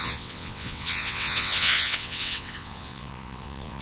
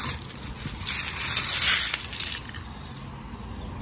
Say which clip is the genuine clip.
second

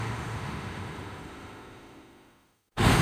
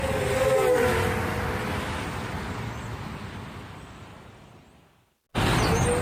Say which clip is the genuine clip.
second